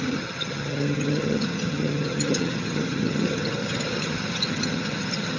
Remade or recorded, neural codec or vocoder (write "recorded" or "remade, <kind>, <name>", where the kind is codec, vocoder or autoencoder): remade, vocoder, HiFi-GAN